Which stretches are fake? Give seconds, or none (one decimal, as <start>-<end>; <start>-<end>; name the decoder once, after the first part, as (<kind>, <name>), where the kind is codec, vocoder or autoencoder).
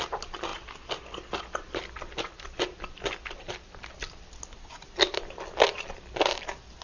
none